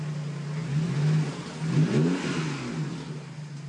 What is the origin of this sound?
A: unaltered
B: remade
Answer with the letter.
A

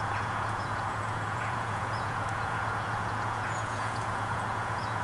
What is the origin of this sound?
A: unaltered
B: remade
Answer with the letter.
B